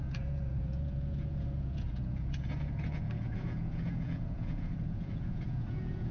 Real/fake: fake